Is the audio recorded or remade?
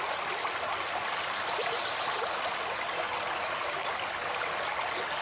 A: recorded